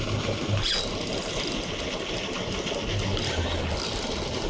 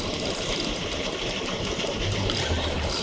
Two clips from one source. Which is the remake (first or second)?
second